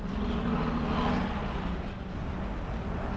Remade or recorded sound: recorded